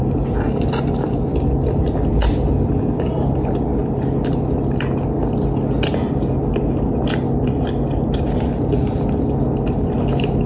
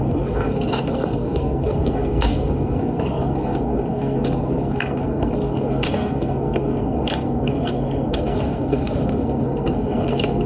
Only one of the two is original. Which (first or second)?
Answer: first